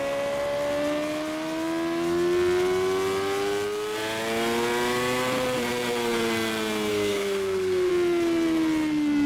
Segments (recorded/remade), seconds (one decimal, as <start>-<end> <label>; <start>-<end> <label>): 0.0-6.9 recorded; 6.9-7.9 remade; 7.9-9.3 recorded